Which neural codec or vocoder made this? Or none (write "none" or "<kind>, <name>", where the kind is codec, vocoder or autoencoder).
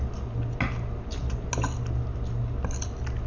none